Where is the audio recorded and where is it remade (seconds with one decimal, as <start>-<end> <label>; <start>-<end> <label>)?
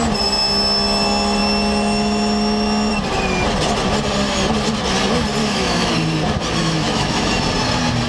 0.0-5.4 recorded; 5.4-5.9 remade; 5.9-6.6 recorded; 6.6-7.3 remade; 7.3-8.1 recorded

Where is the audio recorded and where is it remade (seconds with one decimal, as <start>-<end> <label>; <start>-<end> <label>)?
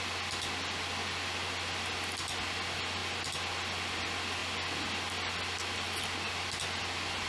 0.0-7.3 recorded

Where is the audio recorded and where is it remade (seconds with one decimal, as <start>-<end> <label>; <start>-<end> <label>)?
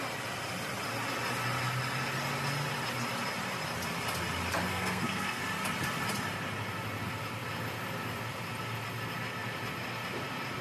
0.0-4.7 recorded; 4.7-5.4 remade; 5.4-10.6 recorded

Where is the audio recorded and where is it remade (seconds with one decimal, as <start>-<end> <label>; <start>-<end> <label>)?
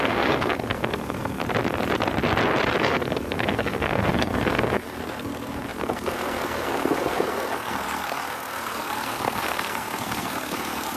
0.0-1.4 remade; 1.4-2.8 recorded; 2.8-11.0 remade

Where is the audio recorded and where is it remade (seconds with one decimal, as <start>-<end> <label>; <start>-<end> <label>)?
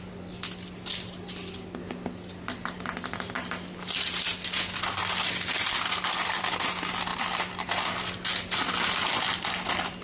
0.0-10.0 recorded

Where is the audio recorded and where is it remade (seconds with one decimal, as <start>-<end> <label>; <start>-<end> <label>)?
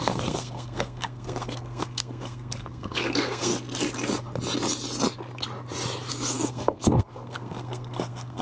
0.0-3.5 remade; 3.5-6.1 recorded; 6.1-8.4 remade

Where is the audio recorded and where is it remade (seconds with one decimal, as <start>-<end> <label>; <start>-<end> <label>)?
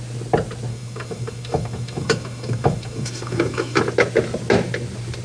0.0-0.7 recorded; 0.7-3.8 remade; 3.8-5.2 recorded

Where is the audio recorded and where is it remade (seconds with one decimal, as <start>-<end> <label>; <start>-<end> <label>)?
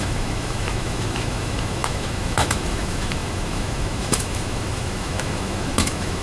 0.0-6.2 remade